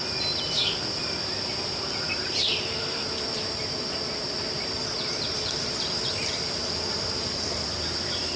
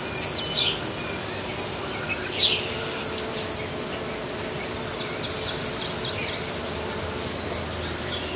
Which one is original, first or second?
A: second